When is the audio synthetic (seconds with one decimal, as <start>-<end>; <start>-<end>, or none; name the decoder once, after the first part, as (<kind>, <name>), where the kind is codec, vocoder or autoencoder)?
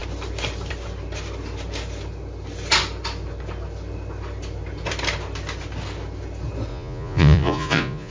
6.7-8.1 (vocoder, Vocos)